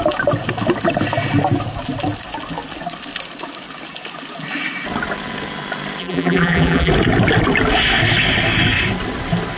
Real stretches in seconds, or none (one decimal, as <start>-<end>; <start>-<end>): 0.0-6.0; 6.9-9.6

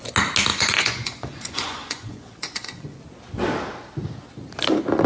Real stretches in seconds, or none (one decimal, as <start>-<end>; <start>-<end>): 0.0-0.5; 3.0-5.1

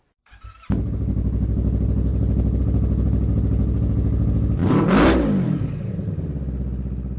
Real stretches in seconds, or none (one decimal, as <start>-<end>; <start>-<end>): 0.0-7.2

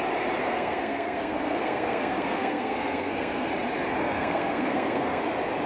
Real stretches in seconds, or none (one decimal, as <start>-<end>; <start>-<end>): 0.0-0.4; 3.5-4.0; 5.2-5.7

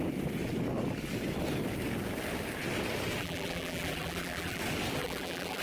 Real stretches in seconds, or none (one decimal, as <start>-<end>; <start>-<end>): 0.0-3.2; 4.6-5.0

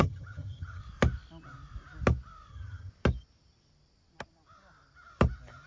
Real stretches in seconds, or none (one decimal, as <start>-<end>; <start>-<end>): 0.8-2.5; 2.9-5.7